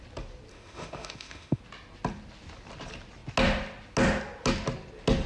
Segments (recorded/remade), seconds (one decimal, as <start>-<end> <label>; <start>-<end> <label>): 0.0-0.5 recorded; 0.5-1.6 remade; 1.6-5.3 recorded